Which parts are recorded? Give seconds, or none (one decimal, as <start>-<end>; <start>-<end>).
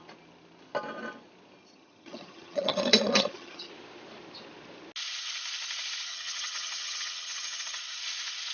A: 0.0-1.6; 3.7-6.1; 7.8-8.5